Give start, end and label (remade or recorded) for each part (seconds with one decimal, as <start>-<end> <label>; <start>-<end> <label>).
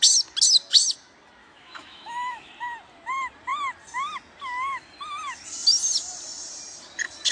0.0-1.4 recorded; 1.4-2.5 remade; 2.5-7.3 recorded